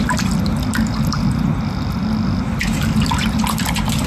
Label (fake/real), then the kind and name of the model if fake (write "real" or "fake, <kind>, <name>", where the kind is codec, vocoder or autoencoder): real